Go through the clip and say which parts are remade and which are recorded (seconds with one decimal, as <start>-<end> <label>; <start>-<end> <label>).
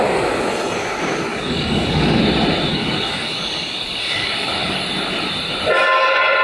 0.0-1.3 recorded; 1.3-2.2 remade; 2.2-2.7 recorded; 2.7-4.8 remade; 4.8-6.4 recorded